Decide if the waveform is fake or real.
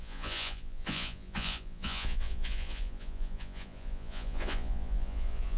fake